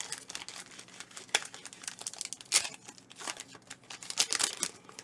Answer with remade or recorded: recorded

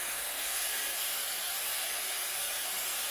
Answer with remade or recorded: remade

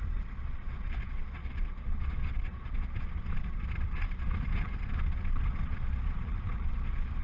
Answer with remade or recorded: remade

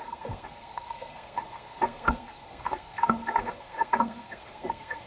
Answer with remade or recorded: remade